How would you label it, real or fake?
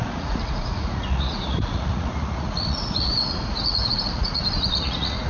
fake